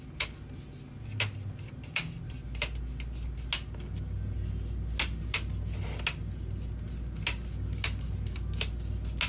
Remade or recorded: recorded